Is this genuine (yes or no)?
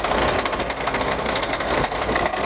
no